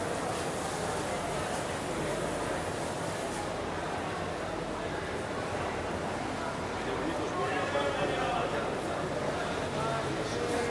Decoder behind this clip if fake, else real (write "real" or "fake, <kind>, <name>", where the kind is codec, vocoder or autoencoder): real